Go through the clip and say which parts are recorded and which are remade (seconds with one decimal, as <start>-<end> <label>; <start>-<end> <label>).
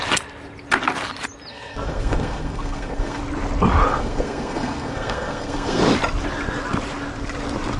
0.0-1.5 recorded; 1.5-3.2 remade; 3.2-3.9 recorded; 3.9-5.8 remade; 5.8-7.8 recorded